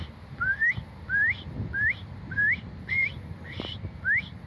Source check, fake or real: real